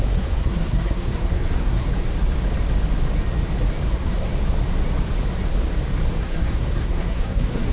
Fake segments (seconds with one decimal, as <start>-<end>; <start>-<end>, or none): 0.0-1.9; 3.9-4.3; 6.2-7.7